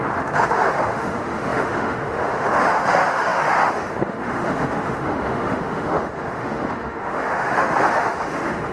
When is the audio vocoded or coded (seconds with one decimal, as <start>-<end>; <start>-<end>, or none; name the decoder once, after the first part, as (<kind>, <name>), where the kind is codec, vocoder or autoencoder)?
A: 0.0-8.7 (autoencoder, DAC-VAE)